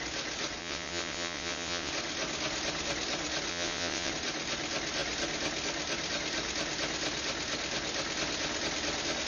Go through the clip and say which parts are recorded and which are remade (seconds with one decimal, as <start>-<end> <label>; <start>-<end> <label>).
0.0-0.6 recorded; 0.6-1.9 remade; 1.9-3.5 recorded; 3.5-4.1 remade; 4.1-9.3 recorded